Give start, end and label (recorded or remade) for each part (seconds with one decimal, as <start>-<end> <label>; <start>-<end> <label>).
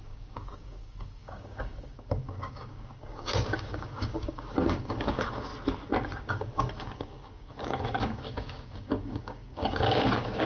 0.0-5.5 remade; 5.5-6.3 recorded; 6.3-10.5 remade